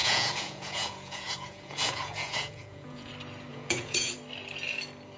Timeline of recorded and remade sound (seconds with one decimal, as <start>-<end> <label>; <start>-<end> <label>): 0.0-3.1 remade; 3.1-3.5 recorded; 3.5-4.1 remade; 4.1-5.2 recorded